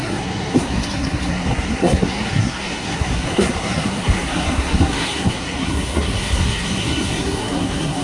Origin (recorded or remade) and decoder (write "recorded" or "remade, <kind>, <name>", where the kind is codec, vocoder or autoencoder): remade, codec, SNAC